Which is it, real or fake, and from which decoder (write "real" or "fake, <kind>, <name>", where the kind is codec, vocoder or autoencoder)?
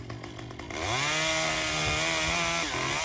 real